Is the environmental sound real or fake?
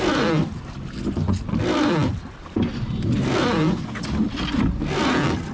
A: real